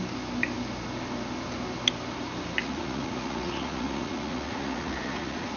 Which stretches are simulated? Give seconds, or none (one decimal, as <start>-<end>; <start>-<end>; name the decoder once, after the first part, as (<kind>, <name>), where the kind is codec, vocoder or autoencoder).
2.6-5.6 (vocoder, Vocos)